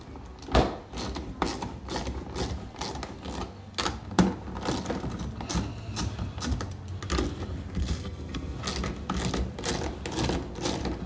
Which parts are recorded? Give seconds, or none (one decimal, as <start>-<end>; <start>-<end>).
0.0-7.8; 8.6-11.1